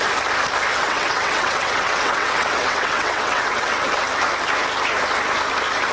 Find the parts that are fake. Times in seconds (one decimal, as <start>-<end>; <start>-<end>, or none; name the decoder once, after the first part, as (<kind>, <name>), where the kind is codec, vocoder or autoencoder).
0.7-4.2 (vocoder, WaveNeXt)